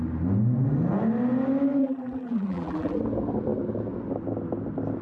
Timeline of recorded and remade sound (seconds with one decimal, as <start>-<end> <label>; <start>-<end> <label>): 0.0-1.8 recorded; 1.8-3.0 remade; 3.0-5.0 recorded